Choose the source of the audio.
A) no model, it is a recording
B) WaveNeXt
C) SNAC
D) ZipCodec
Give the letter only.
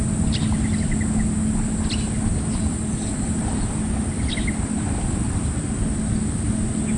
A